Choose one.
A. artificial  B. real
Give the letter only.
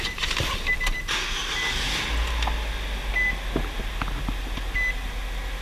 B